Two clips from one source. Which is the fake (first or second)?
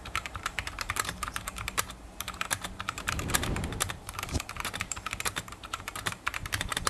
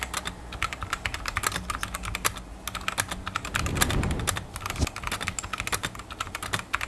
first